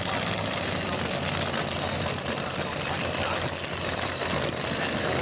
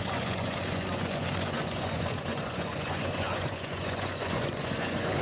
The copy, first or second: second